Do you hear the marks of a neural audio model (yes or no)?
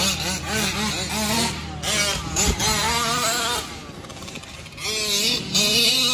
no